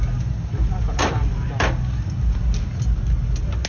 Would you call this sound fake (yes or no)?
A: no